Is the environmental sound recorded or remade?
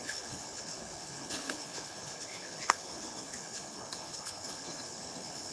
remade